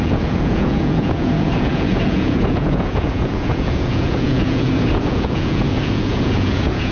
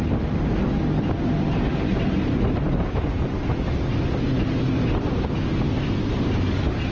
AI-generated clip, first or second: first